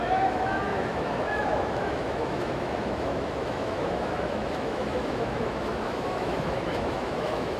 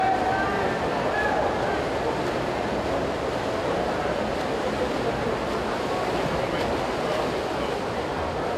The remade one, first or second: first